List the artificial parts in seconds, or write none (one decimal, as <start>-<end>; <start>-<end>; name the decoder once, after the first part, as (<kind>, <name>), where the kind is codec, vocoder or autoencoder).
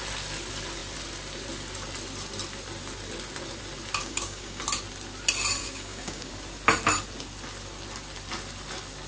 4.0-4.6 (codec, DAC); 5.6-6.3